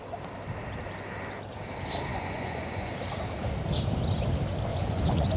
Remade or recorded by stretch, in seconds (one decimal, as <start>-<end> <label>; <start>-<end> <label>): 0.0-2.1 recorded; 2.1-2.9 remade; 2.9-4.7 recorded; 4.7-5.4 remade